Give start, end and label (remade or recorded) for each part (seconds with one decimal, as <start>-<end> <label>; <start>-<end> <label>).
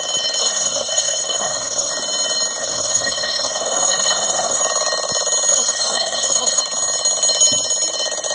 0.0-0.4 recorded; 0.4-1.9 remade; 1.9-2.6 recorded; 2.6-4.6 remade; 4.6-5.5 recorded; 5.5-6.6 remade; 6.6-8.3 recorded